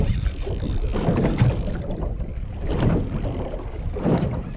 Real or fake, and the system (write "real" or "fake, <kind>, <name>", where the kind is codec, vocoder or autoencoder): real